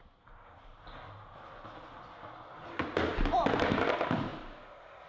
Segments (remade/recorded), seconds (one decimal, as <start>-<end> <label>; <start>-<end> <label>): 0.0-5.1 recorded